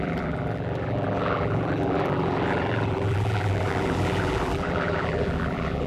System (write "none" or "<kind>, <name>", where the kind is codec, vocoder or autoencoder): vocoder, BigVGAN v2